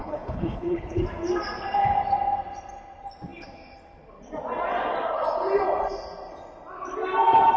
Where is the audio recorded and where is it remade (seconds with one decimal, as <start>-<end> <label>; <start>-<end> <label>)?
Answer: 0.0-1.0 remade; 1.0-7.6 recorded